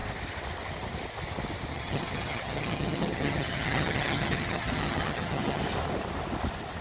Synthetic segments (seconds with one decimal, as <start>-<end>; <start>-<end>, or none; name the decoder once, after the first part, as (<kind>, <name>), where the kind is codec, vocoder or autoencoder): 1.7-5.6 (vocoder, HiFi-GAN)